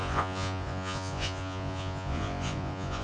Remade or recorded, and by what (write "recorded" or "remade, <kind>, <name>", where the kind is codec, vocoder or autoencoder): remade, vocoder, Vocos